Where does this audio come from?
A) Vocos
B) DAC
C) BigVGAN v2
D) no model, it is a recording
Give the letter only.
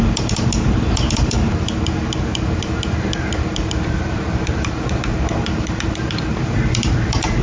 C